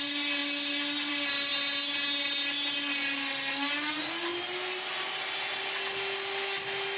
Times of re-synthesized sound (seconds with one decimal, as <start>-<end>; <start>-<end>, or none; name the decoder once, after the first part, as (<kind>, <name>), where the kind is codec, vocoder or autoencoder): none